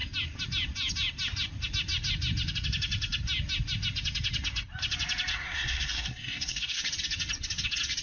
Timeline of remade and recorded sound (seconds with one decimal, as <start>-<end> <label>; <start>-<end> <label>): 0.0-5.3 recorded; 5.3-6.8 remade; 6.8-8.0 recorded